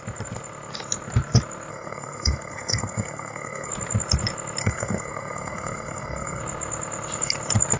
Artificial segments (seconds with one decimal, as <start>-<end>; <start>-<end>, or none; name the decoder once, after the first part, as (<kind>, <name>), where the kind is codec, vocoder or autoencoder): 1.7-3.7 (codec, SNAC); 4.6-6.4